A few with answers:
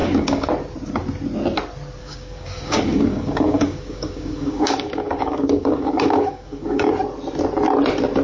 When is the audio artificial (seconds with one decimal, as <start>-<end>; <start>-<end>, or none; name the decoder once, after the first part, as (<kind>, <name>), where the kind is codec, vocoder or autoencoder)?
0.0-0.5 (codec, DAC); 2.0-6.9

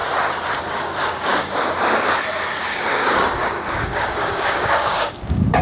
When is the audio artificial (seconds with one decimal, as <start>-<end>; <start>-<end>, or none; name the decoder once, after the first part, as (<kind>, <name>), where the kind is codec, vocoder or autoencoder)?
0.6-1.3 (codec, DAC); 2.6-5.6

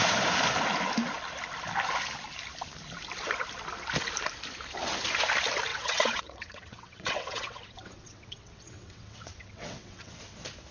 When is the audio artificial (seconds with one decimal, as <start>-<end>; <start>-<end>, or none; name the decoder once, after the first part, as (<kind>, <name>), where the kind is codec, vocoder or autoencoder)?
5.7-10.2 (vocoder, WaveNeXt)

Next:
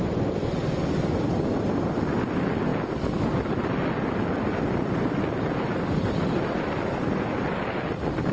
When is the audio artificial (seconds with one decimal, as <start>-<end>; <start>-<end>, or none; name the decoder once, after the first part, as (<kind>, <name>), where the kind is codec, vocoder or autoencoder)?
none

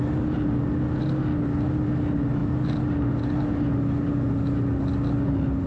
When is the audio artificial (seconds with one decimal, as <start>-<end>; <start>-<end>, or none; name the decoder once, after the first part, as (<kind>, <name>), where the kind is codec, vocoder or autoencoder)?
none

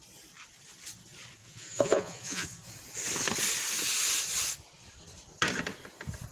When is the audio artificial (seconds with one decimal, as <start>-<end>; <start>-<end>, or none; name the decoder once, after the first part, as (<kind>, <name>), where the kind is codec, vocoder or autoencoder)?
1.4-2.7 (vocoder, Vocos)

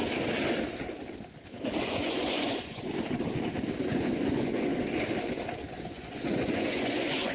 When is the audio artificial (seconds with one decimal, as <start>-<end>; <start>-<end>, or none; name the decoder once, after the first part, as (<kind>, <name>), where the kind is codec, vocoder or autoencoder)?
1.8-2.9 (vocoder, Vocos); 3.8-4.7; 5.7-7.3